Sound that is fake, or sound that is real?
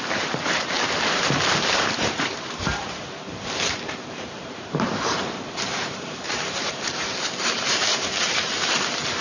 fake